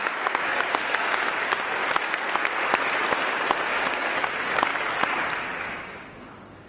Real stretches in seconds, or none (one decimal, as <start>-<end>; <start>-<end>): 1.8-3.7; 4.7-5.6